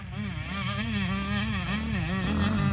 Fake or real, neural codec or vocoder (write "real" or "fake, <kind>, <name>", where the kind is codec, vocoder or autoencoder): real